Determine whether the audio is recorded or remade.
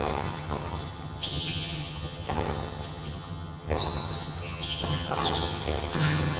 remade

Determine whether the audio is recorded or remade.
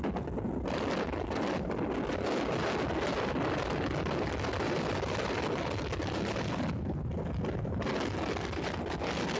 recorded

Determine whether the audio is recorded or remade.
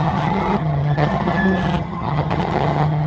remade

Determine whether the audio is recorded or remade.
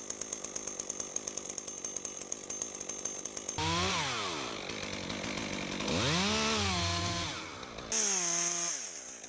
recorded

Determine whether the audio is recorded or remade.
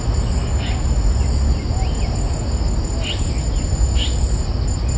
recorded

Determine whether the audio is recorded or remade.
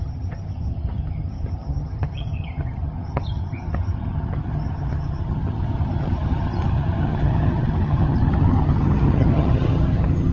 remade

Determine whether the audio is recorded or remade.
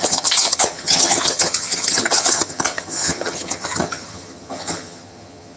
remade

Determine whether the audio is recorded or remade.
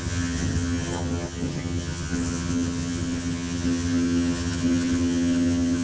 remade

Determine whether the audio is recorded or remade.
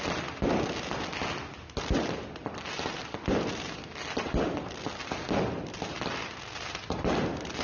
recorded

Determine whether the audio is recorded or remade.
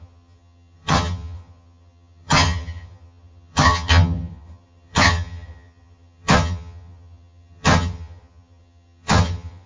remade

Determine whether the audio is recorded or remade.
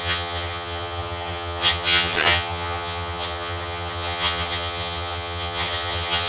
remade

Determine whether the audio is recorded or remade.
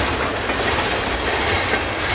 recorded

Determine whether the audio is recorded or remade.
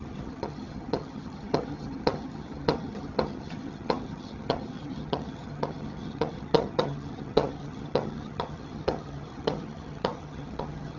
remade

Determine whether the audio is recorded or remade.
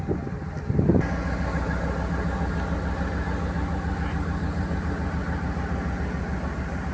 recorded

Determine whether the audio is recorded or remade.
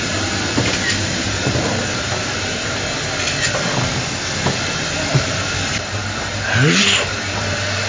recorded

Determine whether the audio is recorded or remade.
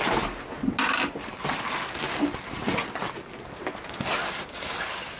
recorded